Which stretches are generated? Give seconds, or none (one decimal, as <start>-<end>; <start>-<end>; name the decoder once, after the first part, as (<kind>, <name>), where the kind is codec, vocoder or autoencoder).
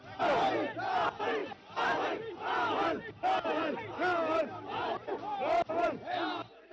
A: 1.4-2.0 (vocoder, BigVGAN v2)